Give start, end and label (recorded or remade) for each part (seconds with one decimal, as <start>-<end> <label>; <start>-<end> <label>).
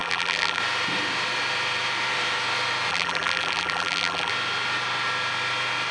0.0-0.6 remade; 0.6-2.9 recorded; 2.9-4.3 remade; 4.3-5.9 recorded